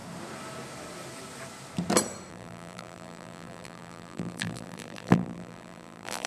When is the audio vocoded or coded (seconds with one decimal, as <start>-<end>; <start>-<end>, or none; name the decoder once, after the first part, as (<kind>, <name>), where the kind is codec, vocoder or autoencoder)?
2.3-6.3 (vocoder, BigVGAN v2)